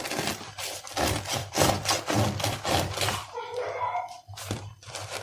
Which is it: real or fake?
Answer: real